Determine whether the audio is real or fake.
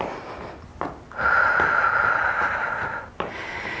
real